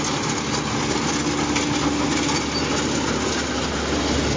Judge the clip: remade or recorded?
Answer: recorded